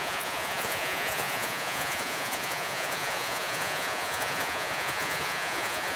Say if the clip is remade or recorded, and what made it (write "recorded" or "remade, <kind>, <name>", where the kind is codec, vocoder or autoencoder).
remade, vocoder, Vocos